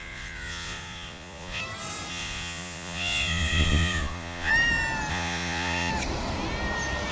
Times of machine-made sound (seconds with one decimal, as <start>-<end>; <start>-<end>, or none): 0.0-1.6; 2.1-4.5; 5.1-5.9